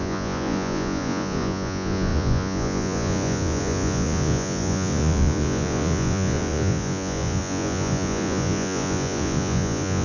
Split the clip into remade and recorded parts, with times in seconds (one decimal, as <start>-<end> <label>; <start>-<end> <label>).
0.0-10.0 remade